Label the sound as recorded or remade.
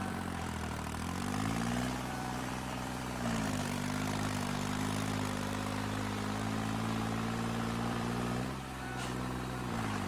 remade